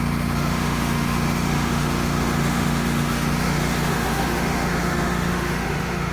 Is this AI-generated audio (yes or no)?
yes